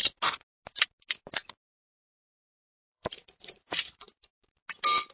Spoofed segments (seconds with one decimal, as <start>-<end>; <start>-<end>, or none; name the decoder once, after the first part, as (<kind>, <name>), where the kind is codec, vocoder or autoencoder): 2.1-4.2 (vocoder, Vocos)

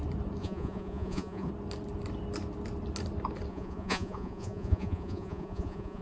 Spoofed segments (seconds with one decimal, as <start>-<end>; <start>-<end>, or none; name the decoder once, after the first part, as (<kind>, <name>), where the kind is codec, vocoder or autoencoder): 0.4-1.5 (vocoder, Vocos); 3.5-6.0

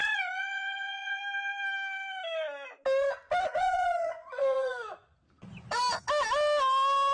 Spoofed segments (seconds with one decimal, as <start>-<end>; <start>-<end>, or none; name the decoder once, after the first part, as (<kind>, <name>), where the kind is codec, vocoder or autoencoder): 0.0-1.2 (vocoder, Vocos); 3.6-5.2